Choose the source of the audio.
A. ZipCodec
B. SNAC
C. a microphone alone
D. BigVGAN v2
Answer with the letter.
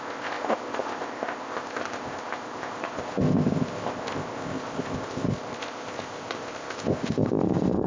A